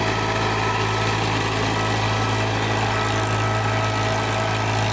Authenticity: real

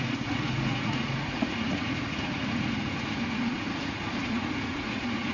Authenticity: fake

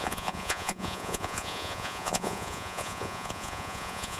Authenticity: fake